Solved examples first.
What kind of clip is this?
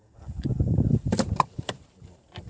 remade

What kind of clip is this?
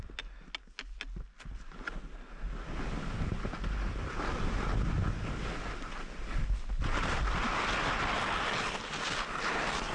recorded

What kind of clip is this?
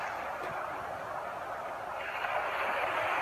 recorded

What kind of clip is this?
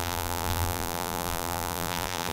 remade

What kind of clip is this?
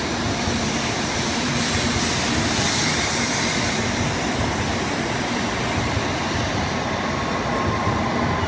remade